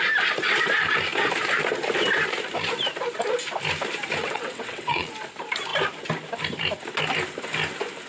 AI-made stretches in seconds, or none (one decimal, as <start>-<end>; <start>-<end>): 4.2-5.1